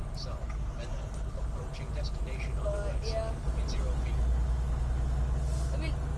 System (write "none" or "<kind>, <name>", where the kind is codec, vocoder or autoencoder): none